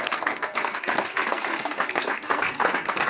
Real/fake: fake